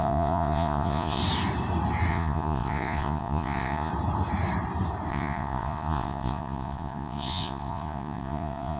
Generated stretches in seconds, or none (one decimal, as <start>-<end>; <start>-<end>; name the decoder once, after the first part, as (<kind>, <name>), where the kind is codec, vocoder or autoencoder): 0.0-1.2 (vocoder, Vocos); 2.1-3.9; 5.1-8.8